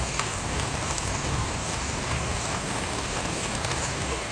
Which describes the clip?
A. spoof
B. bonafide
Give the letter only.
A